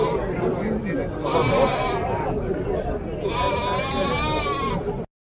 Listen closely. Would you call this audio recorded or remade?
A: recorded